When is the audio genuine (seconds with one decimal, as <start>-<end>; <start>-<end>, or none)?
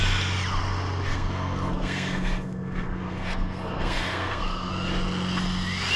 0.0-1.1; 4.7-6.0